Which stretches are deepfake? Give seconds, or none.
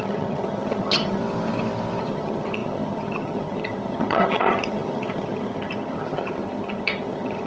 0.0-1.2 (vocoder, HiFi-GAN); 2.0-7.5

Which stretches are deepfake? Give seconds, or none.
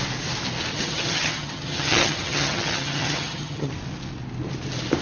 0.7-3.7 (vocoder, HiFi-GAN)